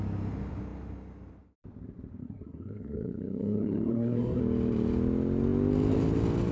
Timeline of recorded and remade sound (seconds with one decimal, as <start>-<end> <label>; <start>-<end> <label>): 0.0-2.2 recorded; 2.2-4.4 remade; 4.4-6.5 recorded